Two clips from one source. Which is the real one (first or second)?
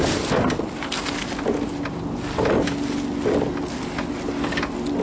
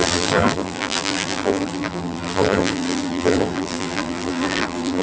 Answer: first